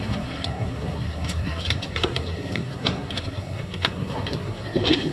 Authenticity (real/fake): fake